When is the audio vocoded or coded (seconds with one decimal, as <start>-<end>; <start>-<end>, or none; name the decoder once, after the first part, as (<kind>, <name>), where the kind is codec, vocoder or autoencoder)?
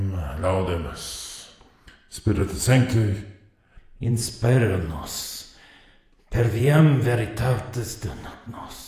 0.4-1.2 (vocoder, BigVGAN v2); 2.4-6.8